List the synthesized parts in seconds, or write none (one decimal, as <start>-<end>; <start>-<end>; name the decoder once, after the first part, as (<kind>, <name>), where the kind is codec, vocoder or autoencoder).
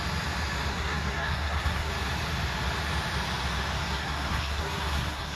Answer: 0.7-1.9 (codec, SNAC); 3.8-5.4